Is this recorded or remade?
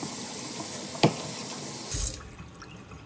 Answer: recorded